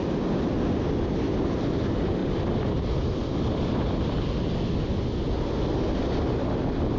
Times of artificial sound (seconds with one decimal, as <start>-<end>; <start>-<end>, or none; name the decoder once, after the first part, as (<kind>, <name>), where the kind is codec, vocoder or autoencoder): 2.2-2.8 (vocoder, BigVGAN v2); 3.3-4.4